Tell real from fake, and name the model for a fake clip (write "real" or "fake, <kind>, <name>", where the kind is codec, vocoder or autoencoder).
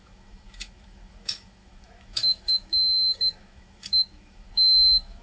fake, autoencoder, DAC-VAE